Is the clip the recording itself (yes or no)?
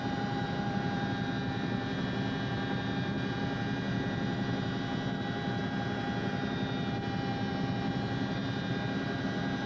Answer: yes